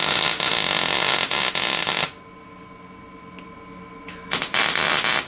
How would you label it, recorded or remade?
recorded